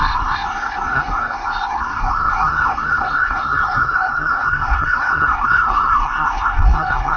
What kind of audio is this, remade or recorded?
remade